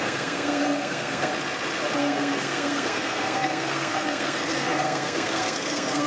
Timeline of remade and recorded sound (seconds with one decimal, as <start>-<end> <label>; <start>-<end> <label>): 0.0-1.3 remade; 1.3-2.0 recorded; 2.0-6.1 remade